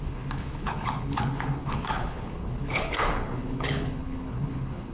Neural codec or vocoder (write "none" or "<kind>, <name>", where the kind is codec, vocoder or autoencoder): codec, HILCodec